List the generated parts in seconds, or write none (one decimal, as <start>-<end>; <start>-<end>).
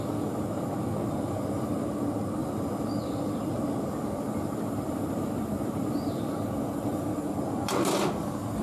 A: 2.4-6.3